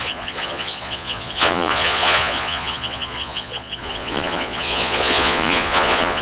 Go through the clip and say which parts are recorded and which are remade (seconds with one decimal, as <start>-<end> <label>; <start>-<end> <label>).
0.0-6.2 remade